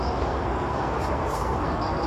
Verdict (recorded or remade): remade